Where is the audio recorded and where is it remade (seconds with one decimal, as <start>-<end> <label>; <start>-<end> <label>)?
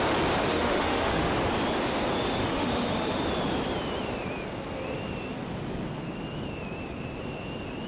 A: 0.0-0.4 recorded; 0.4-1.3 remade; 1.3-2.4 recorded; 2.4-3.2 remade; 3.2-7.9 recorded